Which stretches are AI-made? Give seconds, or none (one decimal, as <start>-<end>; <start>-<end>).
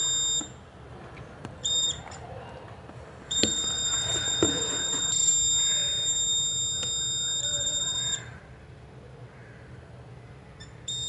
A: 0.9-5.3; 7.5-8.4; 9.4-10.1